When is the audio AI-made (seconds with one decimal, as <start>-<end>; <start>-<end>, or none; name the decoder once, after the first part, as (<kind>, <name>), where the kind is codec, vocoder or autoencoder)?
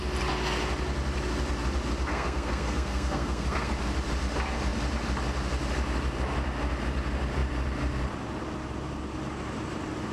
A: 2.1-3.7 (codec, SNAC)